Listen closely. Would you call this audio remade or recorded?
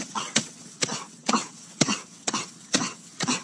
remade